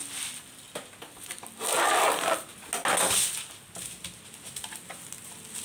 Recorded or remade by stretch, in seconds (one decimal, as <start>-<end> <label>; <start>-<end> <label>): 0.0-5.6 recorded